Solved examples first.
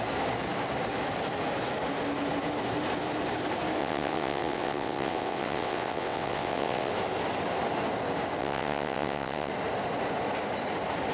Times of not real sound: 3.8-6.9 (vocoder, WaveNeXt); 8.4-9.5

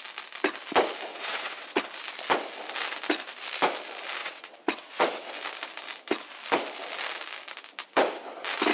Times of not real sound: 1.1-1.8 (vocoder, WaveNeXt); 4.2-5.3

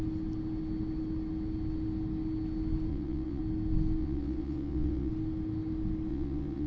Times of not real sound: 2.9-3.4 (vocoder, WaveNeXt); 4.0-5.1; 6.1-6.7